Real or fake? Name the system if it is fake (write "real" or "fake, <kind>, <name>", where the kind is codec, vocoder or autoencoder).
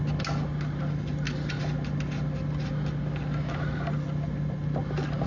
real